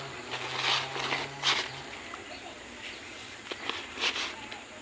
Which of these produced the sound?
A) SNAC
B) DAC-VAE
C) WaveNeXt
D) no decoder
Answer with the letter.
D